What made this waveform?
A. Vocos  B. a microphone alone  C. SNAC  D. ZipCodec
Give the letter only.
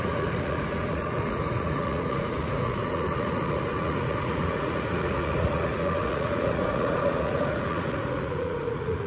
A